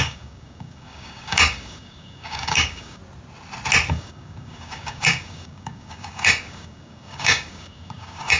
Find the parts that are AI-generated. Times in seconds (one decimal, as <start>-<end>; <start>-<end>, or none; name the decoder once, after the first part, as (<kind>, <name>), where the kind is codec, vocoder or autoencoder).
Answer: 0.0-3.0 (codec, DAC); 3.9-8.4